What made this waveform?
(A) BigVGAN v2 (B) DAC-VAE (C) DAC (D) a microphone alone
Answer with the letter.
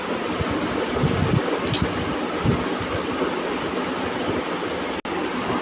D